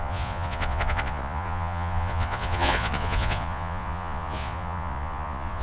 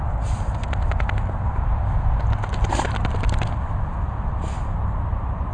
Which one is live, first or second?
second